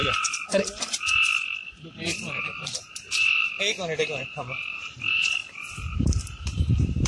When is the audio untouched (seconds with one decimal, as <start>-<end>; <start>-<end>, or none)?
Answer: 0.0-0.9; 1.3-1.9; 5.4-6.2